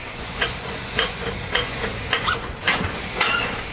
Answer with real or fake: fake